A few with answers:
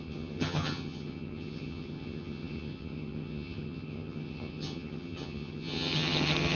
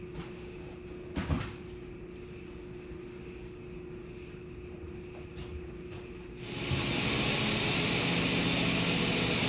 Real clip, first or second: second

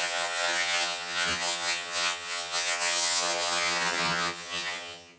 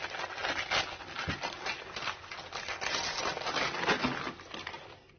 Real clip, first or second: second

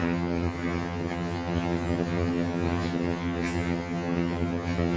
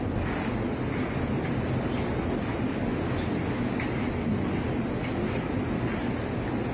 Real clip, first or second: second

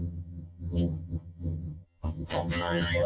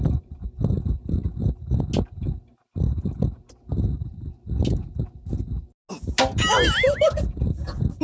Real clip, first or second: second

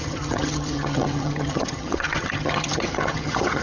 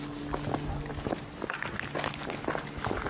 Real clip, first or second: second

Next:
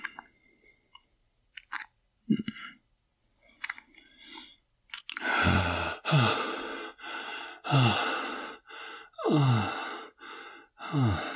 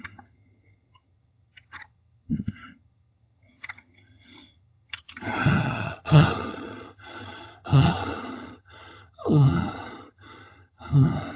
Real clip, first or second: first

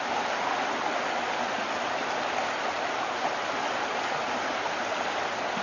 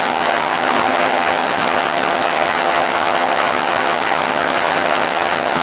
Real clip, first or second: first